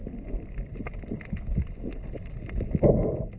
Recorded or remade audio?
recorded